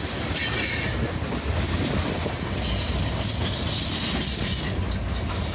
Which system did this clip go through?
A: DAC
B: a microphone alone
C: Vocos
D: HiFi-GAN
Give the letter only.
B